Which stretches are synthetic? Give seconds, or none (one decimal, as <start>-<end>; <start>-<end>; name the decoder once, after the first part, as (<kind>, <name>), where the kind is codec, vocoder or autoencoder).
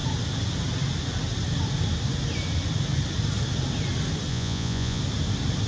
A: 4.3-5.0 (vocoder, Vocos)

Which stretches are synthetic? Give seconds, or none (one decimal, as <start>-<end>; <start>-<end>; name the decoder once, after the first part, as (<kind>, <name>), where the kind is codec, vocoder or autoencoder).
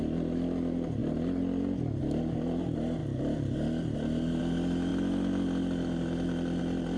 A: none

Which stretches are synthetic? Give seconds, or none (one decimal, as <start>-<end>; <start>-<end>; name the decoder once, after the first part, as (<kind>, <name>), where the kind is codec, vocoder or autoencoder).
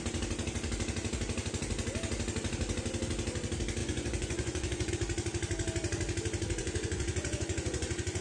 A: 3.8-4.9 (vocoder, Vocos); 6.6-8.2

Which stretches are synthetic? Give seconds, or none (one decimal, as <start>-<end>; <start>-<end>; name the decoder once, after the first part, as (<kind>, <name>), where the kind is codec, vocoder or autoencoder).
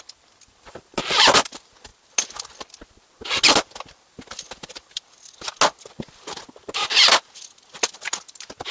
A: none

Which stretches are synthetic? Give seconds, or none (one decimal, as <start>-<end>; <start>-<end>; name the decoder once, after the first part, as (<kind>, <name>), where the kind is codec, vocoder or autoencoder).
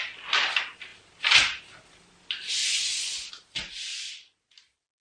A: 2.6-3.3 (vocoder, Vocos)